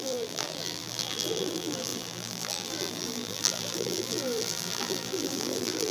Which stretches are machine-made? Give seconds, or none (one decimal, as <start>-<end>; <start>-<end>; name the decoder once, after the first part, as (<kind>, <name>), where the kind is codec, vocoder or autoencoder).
0.0-5.9 (vocoder, BigVGAN v2)